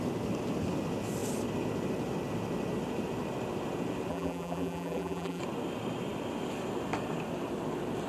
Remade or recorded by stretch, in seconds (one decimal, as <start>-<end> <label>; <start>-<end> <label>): 0.0-4.1 recorded; 4.1-5.4 remade; 5.4-8.1 recorded